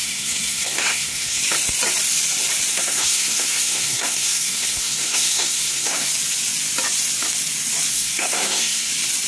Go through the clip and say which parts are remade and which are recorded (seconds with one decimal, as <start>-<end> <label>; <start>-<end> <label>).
0.0-1.4 remade; 1.4-2.7 recorded; 2.7-6.1 remade; 6.1-7.9 recorded; 7.9-8.9 remade; 8.9-9.3 recorded

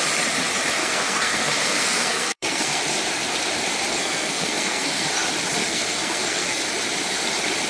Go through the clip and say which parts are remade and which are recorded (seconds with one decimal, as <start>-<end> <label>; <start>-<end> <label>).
0.0-0.8 recorded; 0.8-2.8 remade; 2.8-3.9 recorded; 3.9-5.1 remade; 5.1-5.6 recorded; 5.6-6.6 remade; 6.6-7.7 recorded

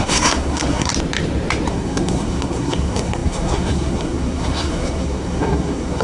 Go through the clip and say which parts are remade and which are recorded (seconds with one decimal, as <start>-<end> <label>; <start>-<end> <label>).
0.0-0.9 remade; 0.9-1.7 recorded; 1.7-6.0 remade

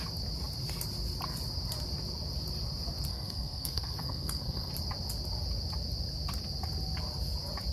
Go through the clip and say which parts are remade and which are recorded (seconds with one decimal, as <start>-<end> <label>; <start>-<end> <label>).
0.0-3.1 recorded; 3.1-4.7 remade; 4.7-7.7 recorded

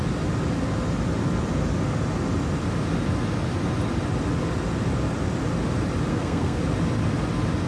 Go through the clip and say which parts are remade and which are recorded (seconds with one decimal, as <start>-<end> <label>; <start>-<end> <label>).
0.0-6.1 recorded; 6.1-6.6 remade; 6.6-7.7 recorded

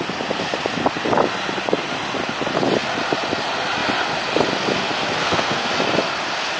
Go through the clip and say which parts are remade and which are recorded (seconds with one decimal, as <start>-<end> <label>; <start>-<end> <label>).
0.0-5.2 recorded; 5.2-5.7 remade; 5.7-6.6 recorded

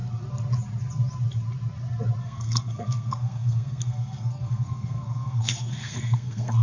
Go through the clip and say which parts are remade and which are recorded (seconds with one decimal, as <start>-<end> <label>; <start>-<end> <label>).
0.0-2.2 recorded; 2.2-6.6 remade

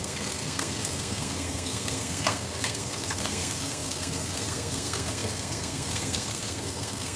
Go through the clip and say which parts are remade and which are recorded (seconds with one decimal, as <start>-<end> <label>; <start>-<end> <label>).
0.0-7.2 remade